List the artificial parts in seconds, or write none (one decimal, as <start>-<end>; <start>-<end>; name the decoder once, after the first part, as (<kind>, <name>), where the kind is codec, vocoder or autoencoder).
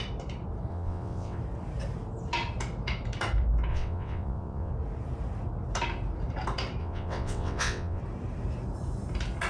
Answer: 0.7-1.4 (vocoder, WaveNeXt); 3.7-4.7; 6.8-8.0